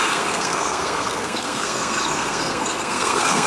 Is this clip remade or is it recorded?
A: remade